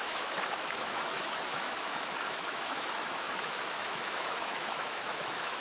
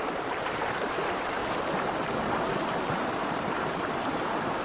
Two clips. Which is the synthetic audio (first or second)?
first